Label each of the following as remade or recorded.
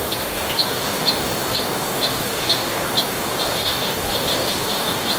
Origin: remade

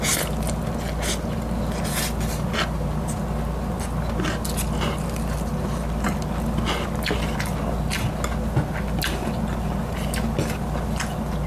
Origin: recorded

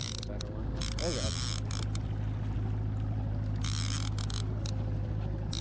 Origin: recorded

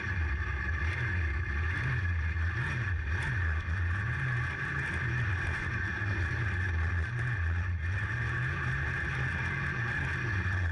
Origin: recorded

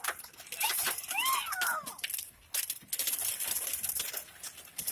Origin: recorded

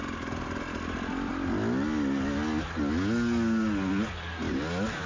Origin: recorded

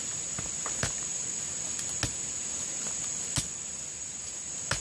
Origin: recorded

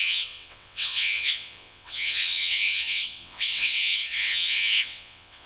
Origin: remade